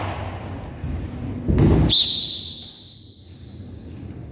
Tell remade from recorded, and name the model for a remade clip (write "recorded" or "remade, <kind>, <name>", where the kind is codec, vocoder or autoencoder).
recorded